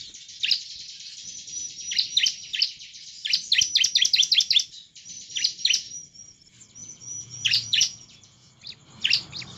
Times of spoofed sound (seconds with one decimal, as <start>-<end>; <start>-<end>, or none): 6.8-8.5